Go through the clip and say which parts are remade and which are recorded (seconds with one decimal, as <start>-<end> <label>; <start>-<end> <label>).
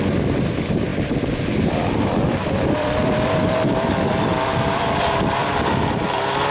0.0-0.9 recorded; 0.9-4.8 remade; 4.8-5.4 recorded; 5.4-6.0 remade; 6.0-6.5 recorded